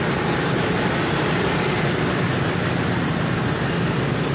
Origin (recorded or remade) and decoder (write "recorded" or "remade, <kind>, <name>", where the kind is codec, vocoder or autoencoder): recorded